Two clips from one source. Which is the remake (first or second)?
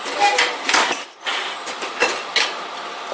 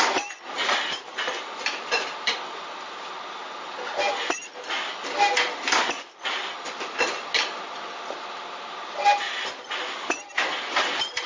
first